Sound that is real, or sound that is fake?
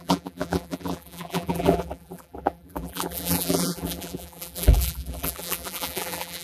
fake